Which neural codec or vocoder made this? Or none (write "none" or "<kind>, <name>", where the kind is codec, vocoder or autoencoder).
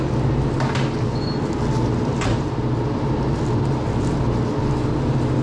none